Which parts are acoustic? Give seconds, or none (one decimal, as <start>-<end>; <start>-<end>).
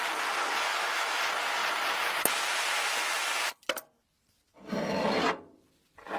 0.0-0.7; 1.2-6.2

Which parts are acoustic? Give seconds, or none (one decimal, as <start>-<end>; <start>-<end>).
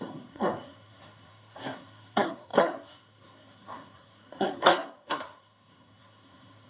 none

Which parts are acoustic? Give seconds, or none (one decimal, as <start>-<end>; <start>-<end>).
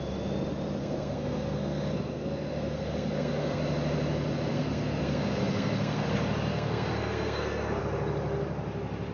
0.0-0.8; 3.6-4.5; 6.1-6.5; 7.8-9.1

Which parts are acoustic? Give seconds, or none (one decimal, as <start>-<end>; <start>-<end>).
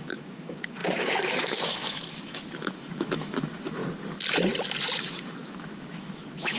3.8-5.0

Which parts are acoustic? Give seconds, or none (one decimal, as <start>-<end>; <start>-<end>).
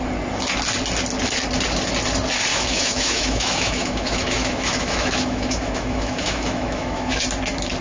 0.0-2.5; 7.2-7.8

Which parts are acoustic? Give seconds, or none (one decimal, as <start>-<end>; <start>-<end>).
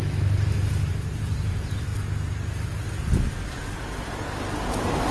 0.0-0.9; 1.9-3.4